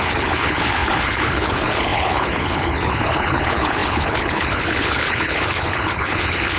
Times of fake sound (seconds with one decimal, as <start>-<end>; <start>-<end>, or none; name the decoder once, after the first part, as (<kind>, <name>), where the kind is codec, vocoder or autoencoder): 0.0-6.6 (codec, HILCodec)